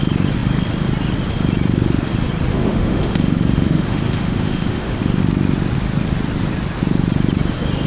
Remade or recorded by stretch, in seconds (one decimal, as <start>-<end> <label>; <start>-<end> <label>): 0.0-2.5 recorded; 2.5-5.2 remade; 5.2-7.9 recorded

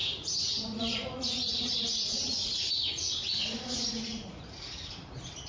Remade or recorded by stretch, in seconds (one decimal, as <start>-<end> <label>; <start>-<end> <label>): 0.0-2.7 remade; 2.7-3.2 recorded; 3.2-4.9 remade; 4.9-5.5 recorded

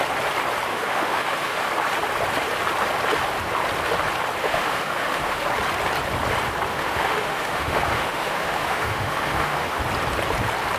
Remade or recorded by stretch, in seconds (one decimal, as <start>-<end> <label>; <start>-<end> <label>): 0.0-0.7 recorded; 0.7-1.7 remade; 1.7-4.4 recorded; 4.4-5.5 remade; 5.5-6.7 recorded; 6.7-9.8 remade; 9.8-10.8 recorded

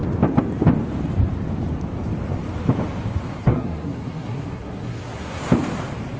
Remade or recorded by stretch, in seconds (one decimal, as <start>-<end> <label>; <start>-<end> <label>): 0.0-3.4 recorded; 3.4-5.4 remade; 5.4-6.2 recorded

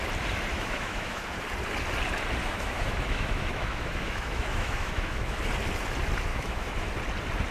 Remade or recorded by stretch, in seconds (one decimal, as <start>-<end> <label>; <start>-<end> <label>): 0.0-0.5 recorded; 0.5-1.2 remade; 1.2-2.4 recorded; 2.4-5.4 remade; 5.4-6.3 recorded; 6.3-6.9 remade; 6.9-7.5 recorded

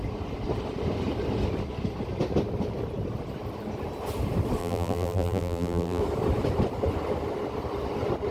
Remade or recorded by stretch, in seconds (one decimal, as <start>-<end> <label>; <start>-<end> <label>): 0.0-4.6 recorded; 4.6-6.0 remade; 6.0-8.3 recorded

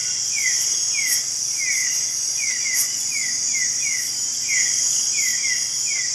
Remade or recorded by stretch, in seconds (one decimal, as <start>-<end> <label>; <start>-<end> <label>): 0.0-0.6 remade; 0.6-1.8 recorded; 1.8-3.1 remade; 3.1-6.1 recorded

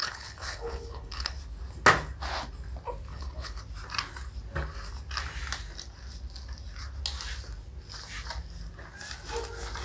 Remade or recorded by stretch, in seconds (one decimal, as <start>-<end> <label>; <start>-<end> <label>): 0.0-1.4 remade; 1.4-3.1 recorded; 3.1-3.6 remade; 3.6-9.8 recorded